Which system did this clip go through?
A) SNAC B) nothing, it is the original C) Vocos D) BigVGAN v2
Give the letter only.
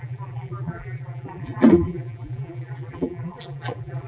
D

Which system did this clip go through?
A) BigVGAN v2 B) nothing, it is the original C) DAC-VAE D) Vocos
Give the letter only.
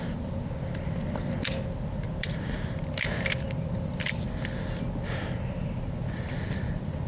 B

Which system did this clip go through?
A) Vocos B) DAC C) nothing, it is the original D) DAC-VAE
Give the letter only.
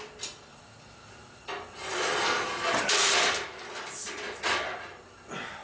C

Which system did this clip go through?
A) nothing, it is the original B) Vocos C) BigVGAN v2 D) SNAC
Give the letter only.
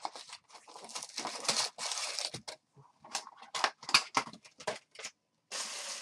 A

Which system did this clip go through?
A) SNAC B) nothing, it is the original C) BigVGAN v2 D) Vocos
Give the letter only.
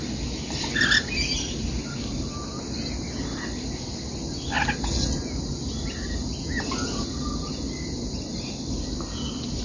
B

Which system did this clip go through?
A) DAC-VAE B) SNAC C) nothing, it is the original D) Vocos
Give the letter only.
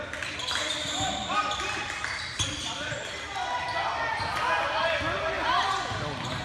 C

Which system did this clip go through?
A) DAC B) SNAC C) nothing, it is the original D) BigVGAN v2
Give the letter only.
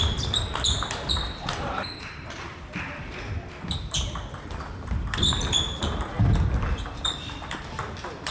D